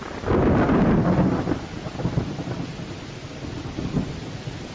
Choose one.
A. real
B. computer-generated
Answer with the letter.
A